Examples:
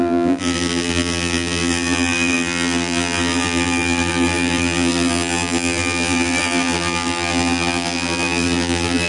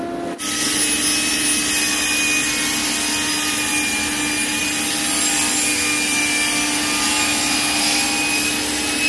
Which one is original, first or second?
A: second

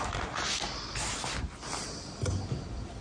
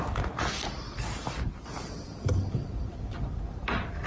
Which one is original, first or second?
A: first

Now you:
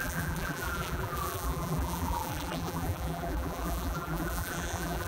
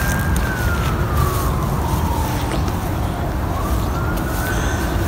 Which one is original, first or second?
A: second